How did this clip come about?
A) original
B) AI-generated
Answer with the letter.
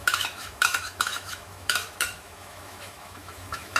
B